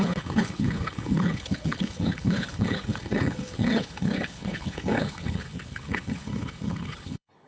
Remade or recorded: remade